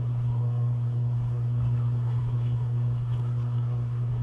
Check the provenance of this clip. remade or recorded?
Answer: remade